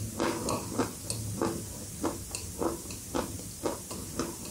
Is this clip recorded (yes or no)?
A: yes